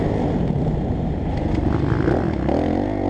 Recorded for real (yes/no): yes